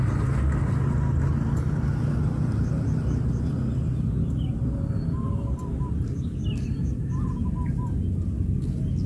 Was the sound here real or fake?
real